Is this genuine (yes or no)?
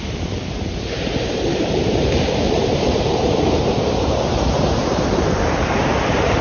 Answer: no